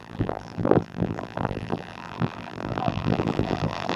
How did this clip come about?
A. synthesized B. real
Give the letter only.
A